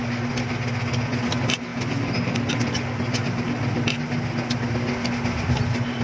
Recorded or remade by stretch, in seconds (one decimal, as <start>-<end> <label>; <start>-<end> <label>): 0.0-6.0 recorded

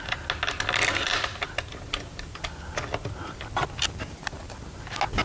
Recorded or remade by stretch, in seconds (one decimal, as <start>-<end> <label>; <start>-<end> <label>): 0.0-5.2 recorded

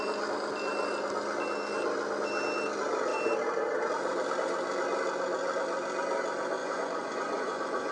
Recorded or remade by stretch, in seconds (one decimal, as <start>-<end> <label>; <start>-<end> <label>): 0.0-6.6 recorded; 6.6-7.9 remade

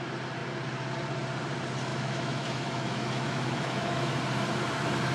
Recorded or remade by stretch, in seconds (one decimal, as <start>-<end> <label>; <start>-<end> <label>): 0.0-1.9 recorded; 1.9-4.2 remade; 4.2-5.1 recorded

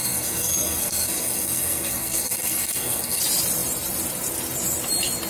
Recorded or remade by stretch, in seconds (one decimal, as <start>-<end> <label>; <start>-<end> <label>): 0.0-3.2 remade; 3.2-5.3 recorded

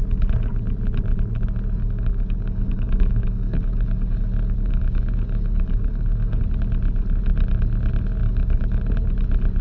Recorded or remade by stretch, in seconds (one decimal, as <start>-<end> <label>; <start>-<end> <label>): 0.0-1.8 recorded; 1.8-6.4 remade; 6.4-8.2 recorded; 8.2-8.8 remade; 8.8-9.6 recorded

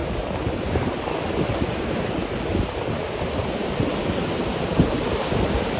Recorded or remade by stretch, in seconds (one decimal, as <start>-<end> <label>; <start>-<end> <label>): 0.0-5.8 recorded

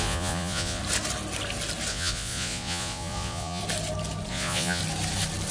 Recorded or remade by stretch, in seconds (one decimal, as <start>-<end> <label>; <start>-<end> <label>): 0.0-0.8 remade; 0.8-1.9 recorded; 1.9-3.6 remade; 3.6-4.3 recorded; 4.3-4.8 remade; 4.8-5.5 recorded